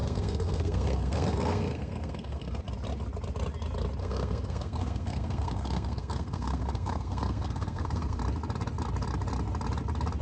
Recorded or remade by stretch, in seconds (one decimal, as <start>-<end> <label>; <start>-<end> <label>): 0.0-2.6 remade; 2.6-4.0 recorded; 4.0-8.2 remade; 8.2-10.2 recorded